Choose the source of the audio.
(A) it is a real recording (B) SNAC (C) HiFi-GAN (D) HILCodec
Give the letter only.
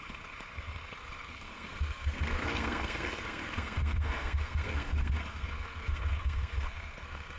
B